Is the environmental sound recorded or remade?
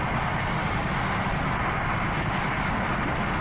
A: recorded